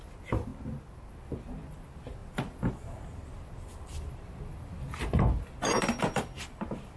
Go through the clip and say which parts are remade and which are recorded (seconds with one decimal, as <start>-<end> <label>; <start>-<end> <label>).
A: 0.0-7.0 recorded